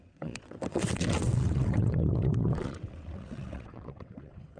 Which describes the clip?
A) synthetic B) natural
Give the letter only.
A